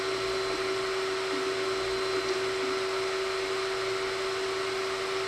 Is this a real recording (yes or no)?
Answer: yes